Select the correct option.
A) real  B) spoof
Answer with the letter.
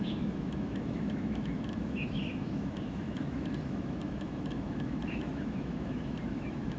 B